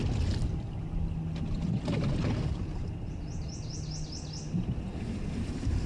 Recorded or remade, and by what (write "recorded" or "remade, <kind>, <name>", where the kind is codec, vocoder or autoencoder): recorded